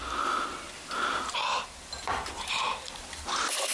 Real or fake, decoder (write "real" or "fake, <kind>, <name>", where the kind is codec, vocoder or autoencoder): real